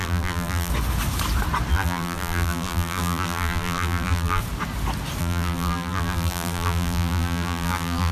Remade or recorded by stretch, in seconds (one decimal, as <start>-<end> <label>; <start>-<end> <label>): 0.0-0.7 remade; 0.7-1.7 recorded; 1.7-4.4 remade; 4.4-5.2 recorded; 5.2-8.1 remade